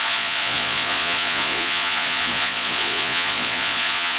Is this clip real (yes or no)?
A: no